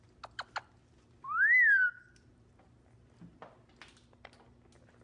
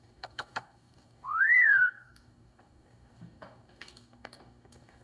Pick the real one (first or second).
first